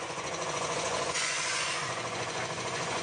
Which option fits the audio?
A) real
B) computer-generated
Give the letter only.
B